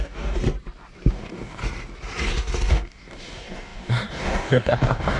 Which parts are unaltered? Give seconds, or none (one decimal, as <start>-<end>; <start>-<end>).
0.4-1.1; 1.6-2.7